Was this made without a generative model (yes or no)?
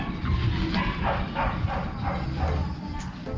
yes